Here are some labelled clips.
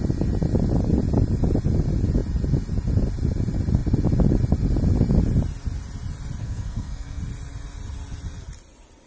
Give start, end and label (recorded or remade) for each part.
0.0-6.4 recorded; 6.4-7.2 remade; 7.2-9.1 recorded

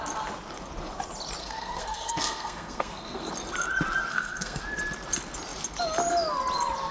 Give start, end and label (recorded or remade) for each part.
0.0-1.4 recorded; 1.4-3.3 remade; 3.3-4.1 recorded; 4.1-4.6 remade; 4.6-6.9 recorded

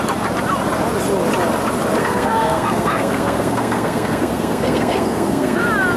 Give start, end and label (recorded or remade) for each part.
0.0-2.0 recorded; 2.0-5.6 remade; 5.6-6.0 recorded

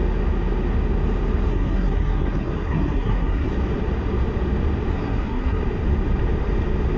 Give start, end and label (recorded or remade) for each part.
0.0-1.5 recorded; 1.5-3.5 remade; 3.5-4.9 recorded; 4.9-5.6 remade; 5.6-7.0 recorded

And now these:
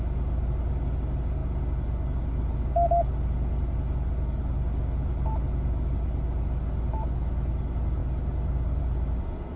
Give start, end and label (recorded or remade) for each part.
0.0-9.6 recorded

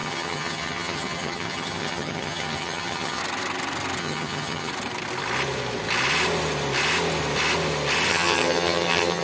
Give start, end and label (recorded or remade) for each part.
0.0-3.2 remade; 3.2-4.0 recorded; 4.0-4.7 remade; 4.7-8.1 recorded; 8.1-9.2 remade

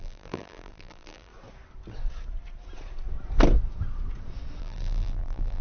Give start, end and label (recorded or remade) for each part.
0.0-1.3 remade; 1.3-4.6 recorded; 4.6-5.6 remade